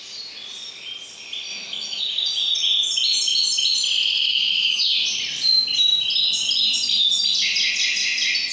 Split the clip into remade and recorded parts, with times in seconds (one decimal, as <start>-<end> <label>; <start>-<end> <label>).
0.0-1.5 recorded; 1.5-2.0 remade; 2.0-4.3 recorded; 4.3-4.9 remade; 4.9-8.5 recorded